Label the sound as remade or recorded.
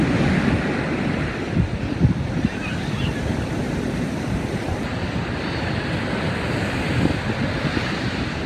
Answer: recorded